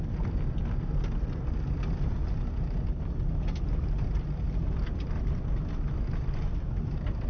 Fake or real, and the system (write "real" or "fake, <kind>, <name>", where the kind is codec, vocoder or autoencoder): real